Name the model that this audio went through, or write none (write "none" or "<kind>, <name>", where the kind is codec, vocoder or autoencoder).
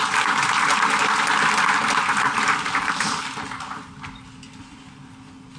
none